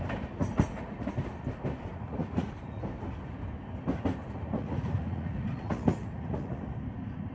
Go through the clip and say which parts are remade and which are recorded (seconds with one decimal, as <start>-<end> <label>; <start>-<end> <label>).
0.0-0.4 recorded; 0.4-1.1 remade; 1.1-1.9 recorded; 1.9-2.8 remade; 2.8-4.2 recorded; 4.2-6.7 remade; 6.7-7.3 recorded